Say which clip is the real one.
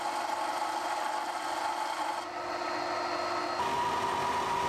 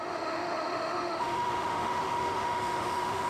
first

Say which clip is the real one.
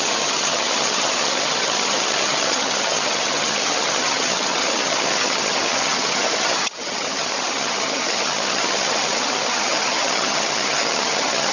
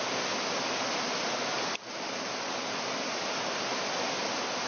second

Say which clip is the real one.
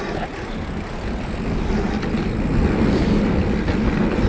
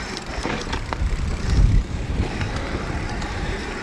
first